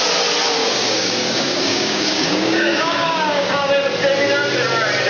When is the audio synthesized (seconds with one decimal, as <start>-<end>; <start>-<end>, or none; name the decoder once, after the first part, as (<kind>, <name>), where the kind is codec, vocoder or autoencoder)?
0.6-3.7 (codec, DAC)